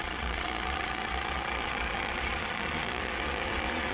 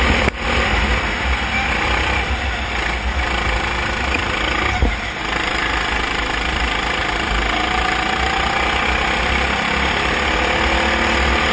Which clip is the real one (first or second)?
second